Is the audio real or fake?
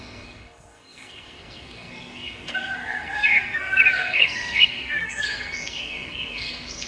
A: fake